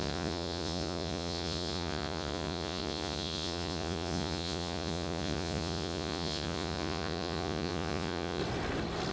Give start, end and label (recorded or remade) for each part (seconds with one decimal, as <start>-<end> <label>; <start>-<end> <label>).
0.0-8.4 remade; 8.4-9.1 recorded